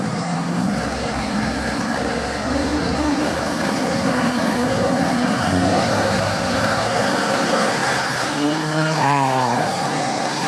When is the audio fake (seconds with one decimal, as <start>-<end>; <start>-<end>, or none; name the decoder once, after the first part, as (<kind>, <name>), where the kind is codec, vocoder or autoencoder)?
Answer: 0.0-10.5 (codec, SNAC)